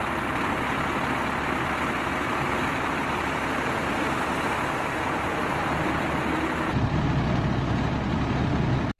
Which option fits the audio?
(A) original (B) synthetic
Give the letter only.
B